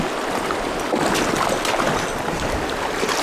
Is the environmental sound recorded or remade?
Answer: recorded